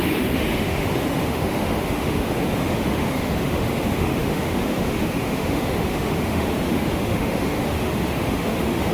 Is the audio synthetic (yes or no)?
yes